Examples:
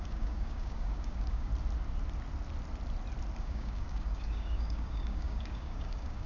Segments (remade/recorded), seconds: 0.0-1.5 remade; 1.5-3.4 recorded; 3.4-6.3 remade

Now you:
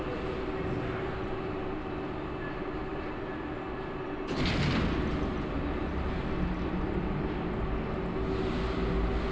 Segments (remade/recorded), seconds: 0.0-9.3 recorded